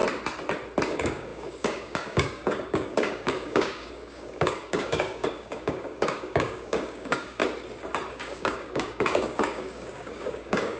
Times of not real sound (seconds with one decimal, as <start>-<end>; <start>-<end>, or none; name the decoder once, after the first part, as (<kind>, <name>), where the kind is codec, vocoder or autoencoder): 0.9-7.4 (codec, DAC); 8.1-10.8

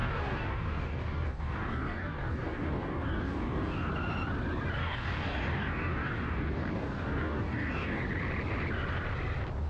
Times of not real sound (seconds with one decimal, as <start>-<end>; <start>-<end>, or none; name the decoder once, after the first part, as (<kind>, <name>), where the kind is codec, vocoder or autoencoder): 0.0-3.9 (codec, DAC); 4.8-8.0

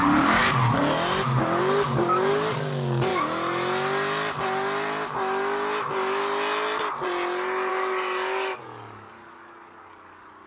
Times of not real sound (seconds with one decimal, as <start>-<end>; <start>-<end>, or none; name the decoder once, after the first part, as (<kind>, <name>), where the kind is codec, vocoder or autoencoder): 0.0-0.4 (codec, DAC); 1.6-3.1; 7.7-10.5

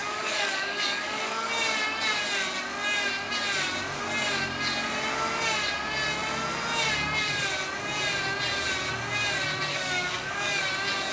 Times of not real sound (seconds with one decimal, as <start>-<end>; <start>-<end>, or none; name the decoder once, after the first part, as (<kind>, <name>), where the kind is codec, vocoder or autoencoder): 0.0-1.5 (codec, DAC); 9.7-10.6